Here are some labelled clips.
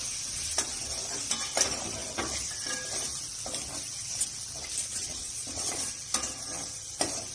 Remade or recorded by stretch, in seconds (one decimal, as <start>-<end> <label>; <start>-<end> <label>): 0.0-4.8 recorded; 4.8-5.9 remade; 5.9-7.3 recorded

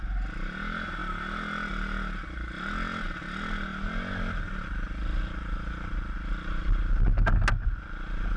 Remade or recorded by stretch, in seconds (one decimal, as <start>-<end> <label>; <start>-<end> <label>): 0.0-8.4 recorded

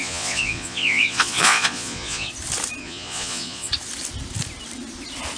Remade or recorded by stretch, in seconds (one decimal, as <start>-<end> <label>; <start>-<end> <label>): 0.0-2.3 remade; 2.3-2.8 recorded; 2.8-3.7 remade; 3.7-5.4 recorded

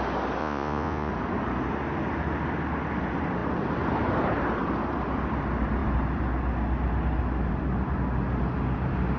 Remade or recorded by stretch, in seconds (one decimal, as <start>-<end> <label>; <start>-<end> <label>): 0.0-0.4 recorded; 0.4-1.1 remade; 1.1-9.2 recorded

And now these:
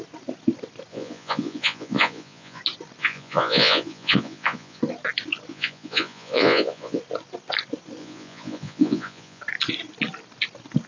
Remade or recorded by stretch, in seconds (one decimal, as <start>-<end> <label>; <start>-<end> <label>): 0.0-0.9 recorded; 0.9-2.6 remade; 2.6-3.0 recorded; 3.0-4.8 remade; 4.8-5.5 recorded; 5.5-7.0 remade; 7.0-8.0 recorded; 8.0-9.4 remade; 9.4-10.9 recorded